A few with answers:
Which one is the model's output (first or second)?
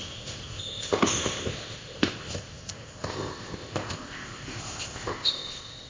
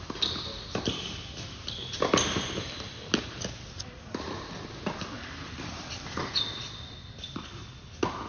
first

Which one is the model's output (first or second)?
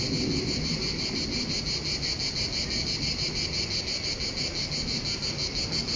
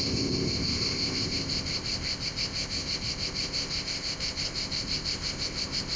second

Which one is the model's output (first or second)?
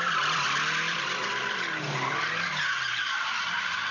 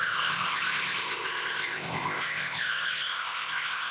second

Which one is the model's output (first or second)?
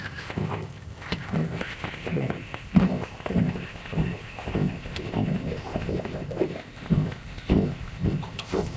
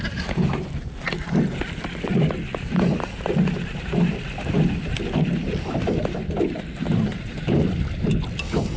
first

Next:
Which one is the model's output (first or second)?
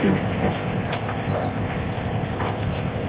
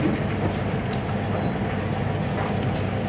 first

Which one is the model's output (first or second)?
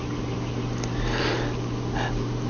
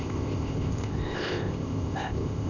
second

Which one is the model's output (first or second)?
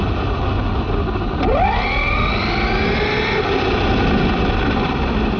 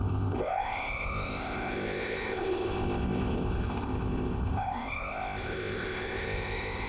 second